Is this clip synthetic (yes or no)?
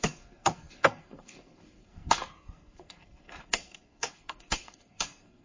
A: yes